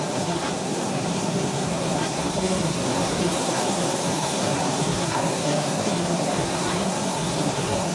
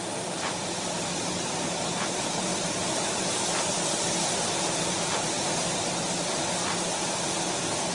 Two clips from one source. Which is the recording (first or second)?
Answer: second